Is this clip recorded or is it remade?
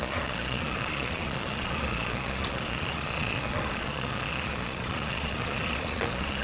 remade